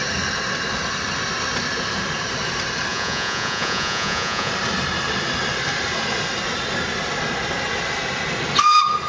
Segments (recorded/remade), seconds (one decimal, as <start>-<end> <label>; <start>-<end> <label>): 0.0-2.9 recorded; 2.9-4.5 remade; 4.5-9.1 recorded